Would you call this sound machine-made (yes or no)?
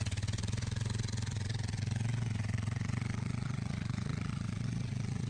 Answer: yes